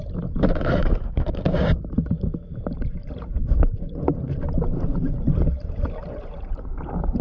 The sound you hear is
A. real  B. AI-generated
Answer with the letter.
B